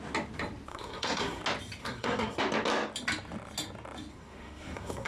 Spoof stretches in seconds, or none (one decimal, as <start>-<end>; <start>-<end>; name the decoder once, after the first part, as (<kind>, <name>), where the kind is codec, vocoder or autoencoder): 0.7-1.4 (codec, SNAC); 1.8-2.4; 4.1-5.1